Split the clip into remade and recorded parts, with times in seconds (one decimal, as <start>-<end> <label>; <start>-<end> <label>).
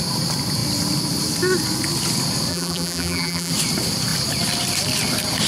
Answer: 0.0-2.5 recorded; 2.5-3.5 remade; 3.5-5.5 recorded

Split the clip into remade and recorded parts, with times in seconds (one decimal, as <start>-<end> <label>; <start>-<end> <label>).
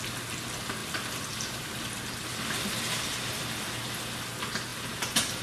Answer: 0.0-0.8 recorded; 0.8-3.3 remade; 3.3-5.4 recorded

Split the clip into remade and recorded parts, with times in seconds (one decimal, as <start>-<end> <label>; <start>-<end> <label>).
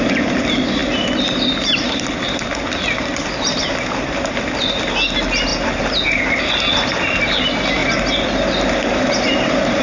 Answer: 0.0-5.5 remade; 5.5-6.2 recorded; 6.2-7.8 remade; 7.8-9.2 recorded; 9.2-9.8 remade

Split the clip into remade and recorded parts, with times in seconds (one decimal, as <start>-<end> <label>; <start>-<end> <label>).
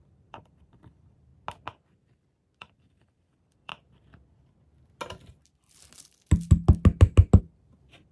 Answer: 0.0-1.3 remade; 1.3-2.6 recorded; 2.6-3.7 remade; 3.7-7.4 recorded; 7.4-8.1 remade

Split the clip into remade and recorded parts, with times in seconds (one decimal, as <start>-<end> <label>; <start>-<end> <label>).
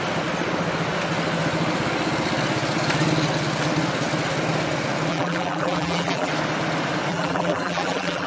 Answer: 0.0-5.1 recorded; 5.1-6.3 remade; 6.3-7.1 recorded; 7.1-8.3 remade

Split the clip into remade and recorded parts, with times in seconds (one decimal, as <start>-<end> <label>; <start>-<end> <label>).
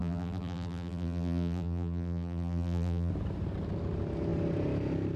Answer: 0.0-3.1 remade; 3.1-5.2 recorded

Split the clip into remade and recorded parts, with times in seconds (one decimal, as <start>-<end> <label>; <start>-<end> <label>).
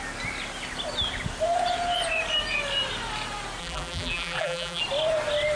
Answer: 0.0-3.6 recorded; 3.6-4.8 remade; 4.8-5.6 recorded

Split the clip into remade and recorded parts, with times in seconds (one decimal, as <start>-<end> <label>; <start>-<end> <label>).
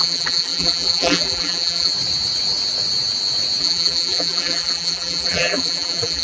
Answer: 0.0-1.9 remade; 1.9-3.6 recorded; 3.6-6.2 remade